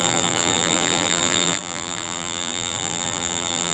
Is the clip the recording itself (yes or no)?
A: no